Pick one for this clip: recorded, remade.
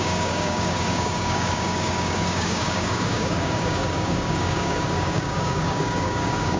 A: remade